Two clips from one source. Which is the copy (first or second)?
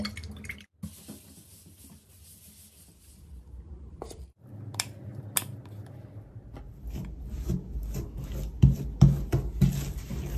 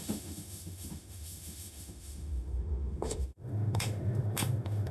second